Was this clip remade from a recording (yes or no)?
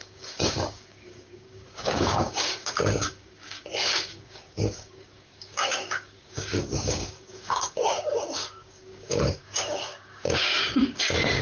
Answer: yes